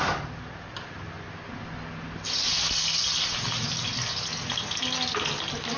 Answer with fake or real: real